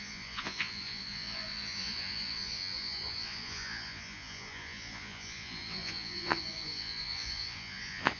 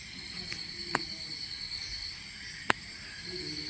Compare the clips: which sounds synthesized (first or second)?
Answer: first